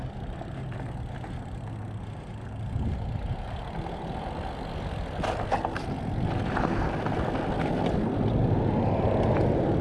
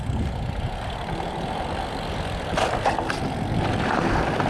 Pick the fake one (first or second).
second